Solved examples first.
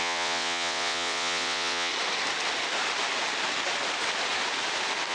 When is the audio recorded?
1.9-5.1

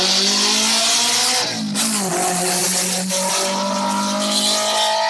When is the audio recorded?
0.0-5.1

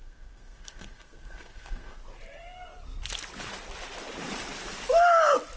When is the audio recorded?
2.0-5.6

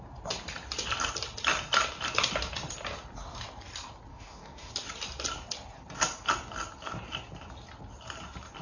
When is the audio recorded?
0.0-4.1; 4.7-8.6

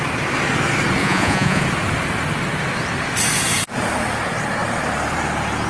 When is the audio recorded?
0.0-1.0; 1.6-5.7